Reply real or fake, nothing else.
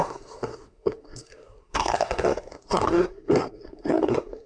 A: fake